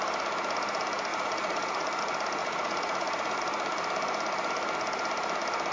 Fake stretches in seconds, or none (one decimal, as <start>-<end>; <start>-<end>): 1.1-2.0; 2.4-3.4